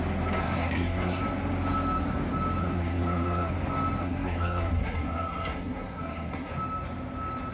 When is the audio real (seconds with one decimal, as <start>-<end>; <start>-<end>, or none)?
0.0-0.4; 1.2-2.6; 3.5-4.0; 6.5-7.5